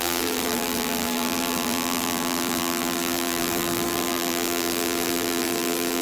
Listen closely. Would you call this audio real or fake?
fake